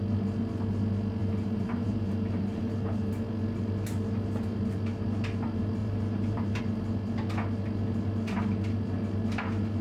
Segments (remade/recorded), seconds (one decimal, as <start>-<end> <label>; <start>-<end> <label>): 0.0-1.2 recorded; 1.2-3.1 remade; 3.1-5.8 recorded; 5.8-6.6 remade; 6.6-9.8 recorded